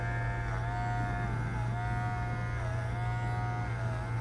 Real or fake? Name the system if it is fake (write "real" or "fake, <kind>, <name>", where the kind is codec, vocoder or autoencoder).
real